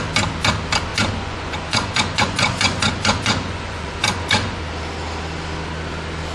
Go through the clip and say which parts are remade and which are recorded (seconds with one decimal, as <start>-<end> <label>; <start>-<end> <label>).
0.0-0.9 recorded; 0.9-4.6 remade; 4.6-6.3 recorded